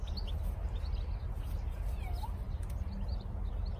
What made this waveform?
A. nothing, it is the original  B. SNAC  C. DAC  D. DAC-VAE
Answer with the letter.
A